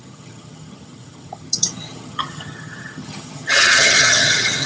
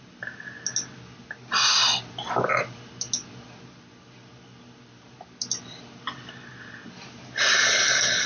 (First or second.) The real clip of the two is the second